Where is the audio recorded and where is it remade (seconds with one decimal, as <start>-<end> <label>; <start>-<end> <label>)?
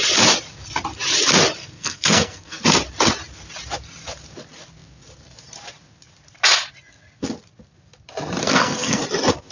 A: 0.0-1.6 recorded; 1.6-2.6 remade; 2.6-8.4 recorded; 8.4-9.0 remade; 9.0-9.5 recorded